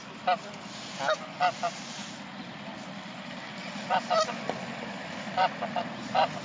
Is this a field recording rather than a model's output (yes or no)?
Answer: yes